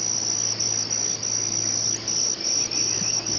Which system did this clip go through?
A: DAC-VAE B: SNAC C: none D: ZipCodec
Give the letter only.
C